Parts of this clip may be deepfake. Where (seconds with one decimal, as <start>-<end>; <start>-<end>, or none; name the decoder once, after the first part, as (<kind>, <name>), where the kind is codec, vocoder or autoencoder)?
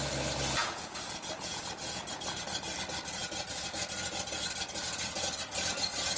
0.6-1.6 (vocoder, Vocos)